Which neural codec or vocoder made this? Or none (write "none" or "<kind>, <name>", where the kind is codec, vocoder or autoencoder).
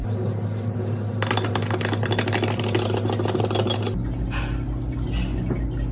none